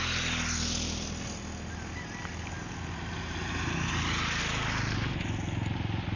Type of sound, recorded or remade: recorded